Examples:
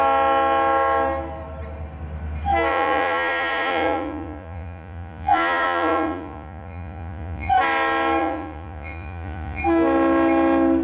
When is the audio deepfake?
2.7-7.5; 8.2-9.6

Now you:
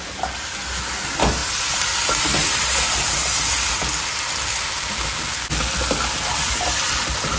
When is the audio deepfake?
none

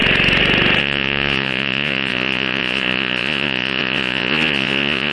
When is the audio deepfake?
0.8-5.1

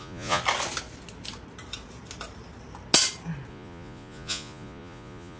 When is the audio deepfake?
0.0-0.4; 3.5-5.4

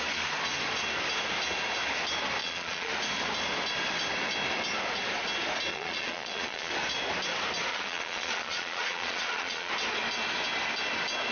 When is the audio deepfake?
2.4-2.9; 5.7-6.7; 7.7-9.7

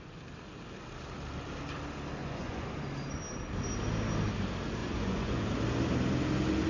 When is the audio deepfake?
2.2-2.7; 4.8-5.5

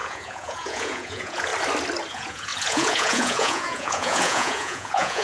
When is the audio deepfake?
0.0-1.5; 2.1-5.2